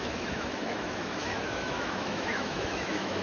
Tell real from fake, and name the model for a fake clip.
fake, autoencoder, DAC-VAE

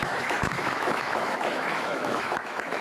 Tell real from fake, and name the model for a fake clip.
fake, autoencoder, DAC-VAE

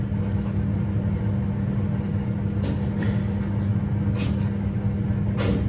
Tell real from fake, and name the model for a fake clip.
real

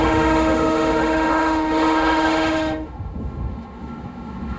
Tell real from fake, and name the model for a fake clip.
fake, autoencoder, DAC-VAE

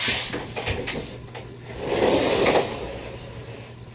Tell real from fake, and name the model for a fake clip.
real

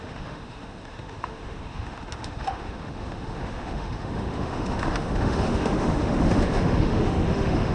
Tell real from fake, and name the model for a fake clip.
fake, autoencoder, DAC-VAE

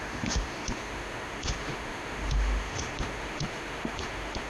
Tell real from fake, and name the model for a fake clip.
fake, autoencoder, DAC-VAE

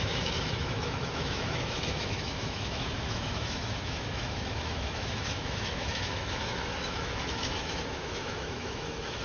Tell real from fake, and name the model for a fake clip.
fake, autoencoder, DAC-VAE